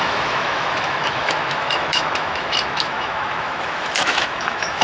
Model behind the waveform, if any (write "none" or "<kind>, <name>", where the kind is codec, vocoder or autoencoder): autoencoder, DAC-VAE